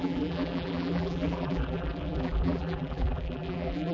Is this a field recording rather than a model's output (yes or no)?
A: no